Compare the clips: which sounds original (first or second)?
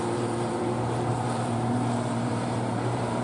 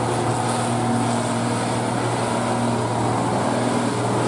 second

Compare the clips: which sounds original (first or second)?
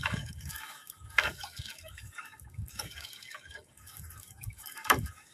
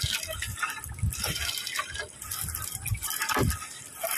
second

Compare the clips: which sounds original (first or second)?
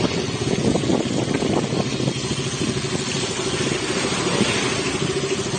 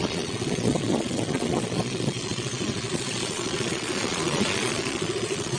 first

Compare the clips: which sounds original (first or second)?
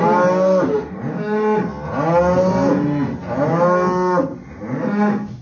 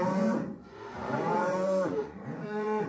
first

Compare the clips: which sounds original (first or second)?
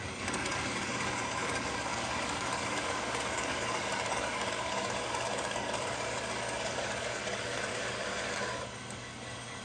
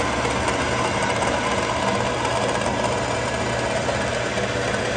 second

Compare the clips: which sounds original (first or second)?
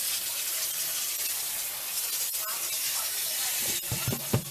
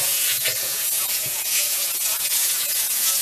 first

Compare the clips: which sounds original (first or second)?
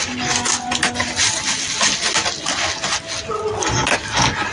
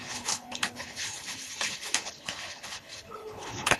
first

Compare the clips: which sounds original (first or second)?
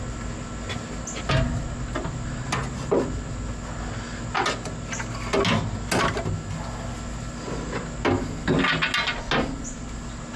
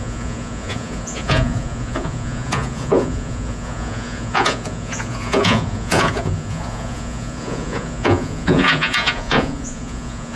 first